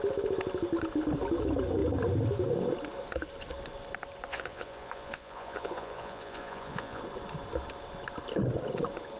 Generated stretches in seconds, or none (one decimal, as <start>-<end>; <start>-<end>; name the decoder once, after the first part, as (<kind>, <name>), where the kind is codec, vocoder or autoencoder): 4.3-7.0 (vocoder, Vocos)